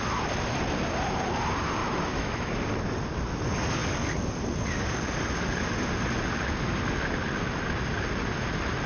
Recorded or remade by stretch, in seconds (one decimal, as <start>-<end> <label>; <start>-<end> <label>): 0.0-1.8 recorded; 1.8-2.5 remade; 2.5-8.9 recorded